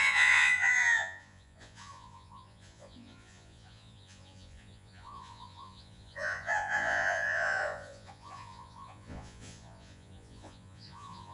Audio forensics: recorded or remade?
remade